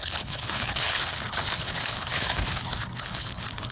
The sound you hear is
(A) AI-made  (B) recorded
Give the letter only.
A